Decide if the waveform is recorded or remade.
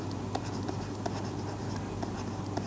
recorded